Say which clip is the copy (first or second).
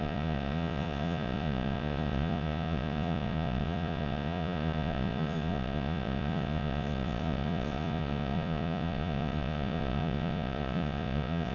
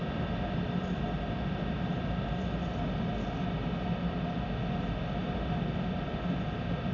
first